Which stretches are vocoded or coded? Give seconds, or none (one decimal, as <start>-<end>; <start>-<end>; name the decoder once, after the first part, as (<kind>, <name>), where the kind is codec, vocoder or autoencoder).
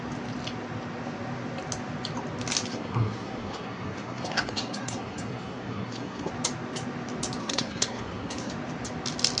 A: 2.7-6.3 (codec, SNAC); 7.4-8.5